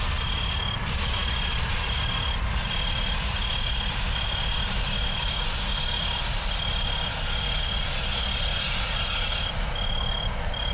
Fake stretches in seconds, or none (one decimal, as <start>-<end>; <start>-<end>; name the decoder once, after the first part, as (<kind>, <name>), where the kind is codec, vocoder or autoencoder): none